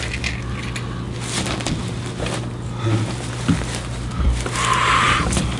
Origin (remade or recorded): recorded